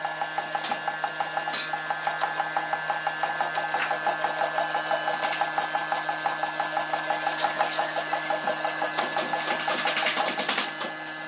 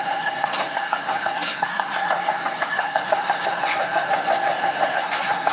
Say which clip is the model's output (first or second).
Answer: second